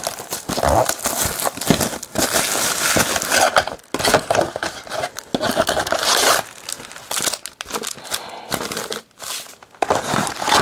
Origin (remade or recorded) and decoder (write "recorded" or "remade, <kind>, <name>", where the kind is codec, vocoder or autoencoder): recorded